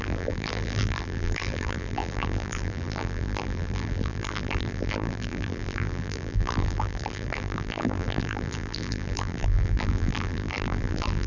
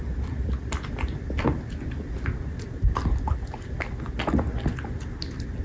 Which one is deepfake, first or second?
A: first